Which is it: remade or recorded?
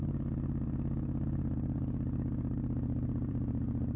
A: remade